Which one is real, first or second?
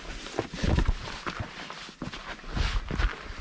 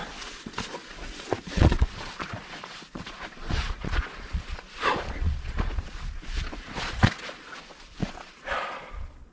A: first